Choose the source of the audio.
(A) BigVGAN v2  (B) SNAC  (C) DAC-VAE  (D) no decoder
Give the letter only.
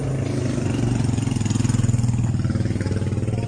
D